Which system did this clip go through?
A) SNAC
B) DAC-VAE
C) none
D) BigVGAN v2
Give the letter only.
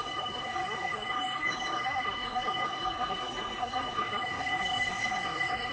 A